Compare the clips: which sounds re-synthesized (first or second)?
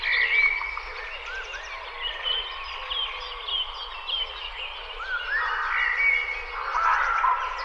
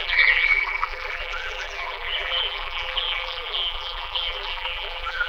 second